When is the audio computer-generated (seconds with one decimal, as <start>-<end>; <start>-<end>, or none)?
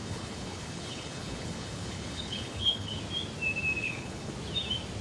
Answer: 0.0-3.0; 3.8-4.3